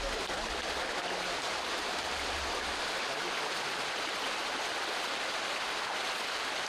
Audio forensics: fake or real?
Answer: real